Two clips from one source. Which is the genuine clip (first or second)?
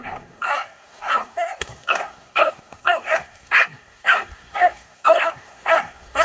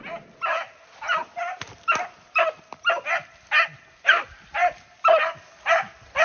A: second